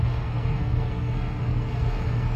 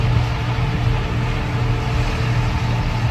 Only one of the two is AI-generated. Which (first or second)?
first